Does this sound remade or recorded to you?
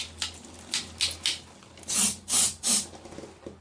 recorded